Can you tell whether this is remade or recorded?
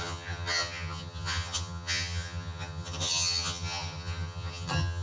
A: remade